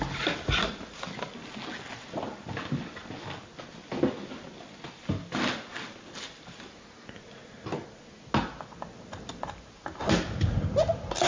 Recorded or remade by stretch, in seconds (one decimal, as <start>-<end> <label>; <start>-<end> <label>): 0.0-11.3 recorded